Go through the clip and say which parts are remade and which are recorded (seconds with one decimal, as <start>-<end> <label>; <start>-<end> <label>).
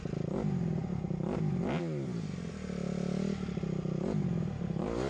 0.0-5.1 recorded